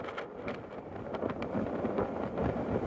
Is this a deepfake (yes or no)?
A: no